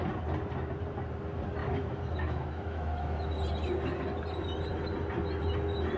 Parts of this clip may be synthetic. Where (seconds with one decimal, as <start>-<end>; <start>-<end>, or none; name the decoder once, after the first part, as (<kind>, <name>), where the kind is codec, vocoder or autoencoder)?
1.6-3.3 (autoencoder, DAC-VAE)